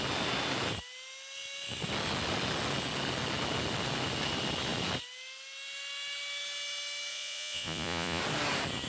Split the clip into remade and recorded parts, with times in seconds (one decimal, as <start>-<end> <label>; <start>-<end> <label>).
0.0-7.1 recorded; 7.1-8.2 remade; 8.2-8.9 recorded